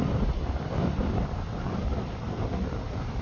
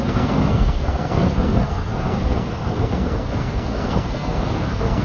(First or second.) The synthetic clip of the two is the second